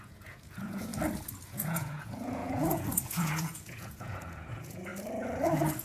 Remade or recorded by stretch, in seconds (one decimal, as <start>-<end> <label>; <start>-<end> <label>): 0.0-0.9 remade; 0.9-1.4 recorded; 1.4-4.9 remade; 4.9-5.8 recorded